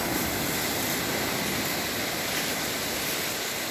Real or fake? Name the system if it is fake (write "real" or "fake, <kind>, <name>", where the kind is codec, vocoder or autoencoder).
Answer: real